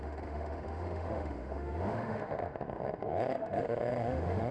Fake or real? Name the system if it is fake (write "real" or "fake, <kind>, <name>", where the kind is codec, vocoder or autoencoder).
fake, autoencoder, DAC-VAE